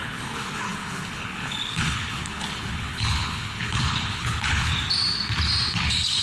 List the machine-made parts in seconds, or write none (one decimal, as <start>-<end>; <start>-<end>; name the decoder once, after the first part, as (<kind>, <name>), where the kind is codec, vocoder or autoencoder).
0.0-4.7 (codec, HILCodec); 5.7-6.2